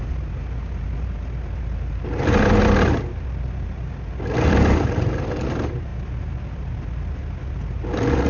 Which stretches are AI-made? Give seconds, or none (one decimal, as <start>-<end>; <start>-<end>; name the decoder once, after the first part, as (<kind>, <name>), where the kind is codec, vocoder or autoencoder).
none